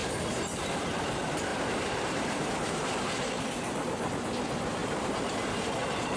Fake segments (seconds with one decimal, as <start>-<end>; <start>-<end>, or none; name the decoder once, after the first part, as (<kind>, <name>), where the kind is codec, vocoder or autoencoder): 1.5-3.3 (vocoder, BigVGAN v2); 4.8-5.7